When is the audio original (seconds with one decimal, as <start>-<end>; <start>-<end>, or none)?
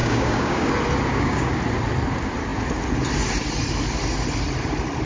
0.7-1.1; 1.6-5.1